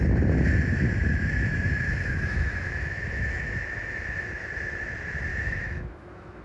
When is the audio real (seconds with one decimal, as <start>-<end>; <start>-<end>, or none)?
0.0-0.7; 4.5-5.3